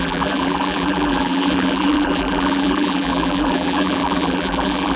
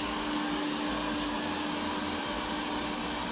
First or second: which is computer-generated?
first